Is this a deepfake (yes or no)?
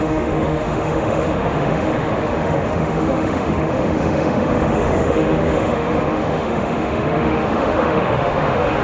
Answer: yes